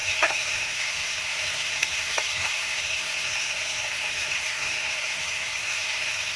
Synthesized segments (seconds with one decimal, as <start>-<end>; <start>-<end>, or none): 0.0-6.4